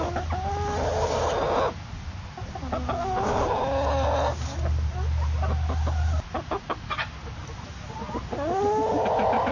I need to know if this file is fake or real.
real